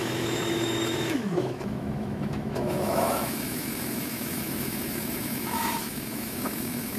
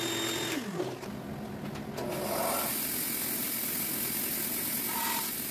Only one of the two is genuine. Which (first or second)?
second